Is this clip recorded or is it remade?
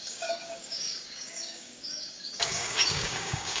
remade